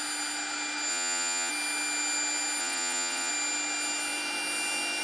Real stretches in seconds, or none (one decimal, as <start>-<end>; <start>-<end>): 0.0-0.9; 1.5-2.6; 3.3-5.0